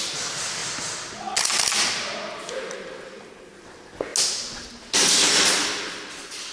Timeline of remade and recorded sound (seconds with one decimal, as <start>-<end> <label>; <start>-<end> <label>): 0.0-6.5 recorded